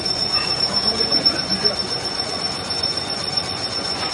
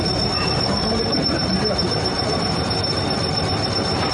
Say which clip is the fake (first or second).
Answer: first